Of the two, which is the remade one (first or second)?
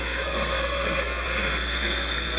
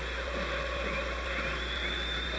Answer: first